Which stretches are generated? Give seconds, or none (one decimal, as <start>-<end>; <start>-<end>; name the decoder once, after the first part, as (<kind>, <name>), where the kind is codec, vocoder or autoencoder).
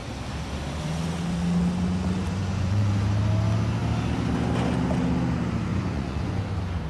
2.4-2.9 (vocoder, Vocos); 5.7-6.4